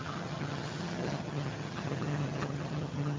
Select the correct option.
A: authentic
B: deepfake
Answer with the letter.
B